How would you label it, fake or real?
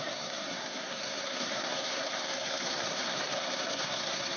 fake